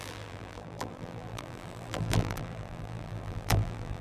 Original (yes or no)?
no